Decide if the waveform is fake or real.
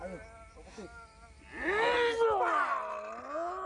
real